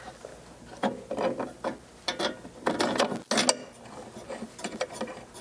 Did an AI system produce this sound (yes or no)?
no